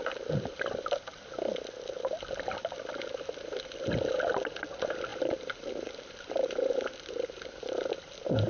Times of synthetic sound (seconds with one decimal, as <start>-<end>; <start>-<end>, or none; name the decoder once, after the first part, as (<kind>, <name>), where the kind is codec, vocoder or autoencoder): 5.1-7.9 (vocoder, BigVGAN v2)